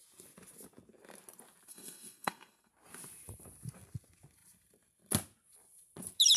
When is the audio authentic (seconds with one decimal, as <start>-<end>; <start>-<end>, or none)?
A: 0.0-1.7; 2.7-6.4